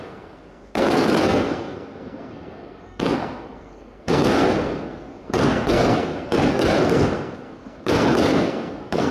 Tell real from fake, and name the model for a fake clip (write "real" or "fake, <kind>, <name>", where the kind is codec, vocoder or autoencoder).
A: fake, codec, SNAC